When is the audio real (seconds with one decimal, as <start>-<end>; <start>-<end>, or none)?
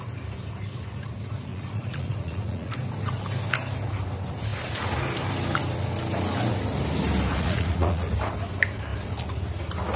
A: 0.0-1.5; 2.7-7.3; 8.1-10.0